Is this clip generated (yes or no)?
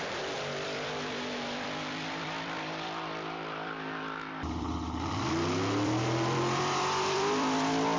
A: yes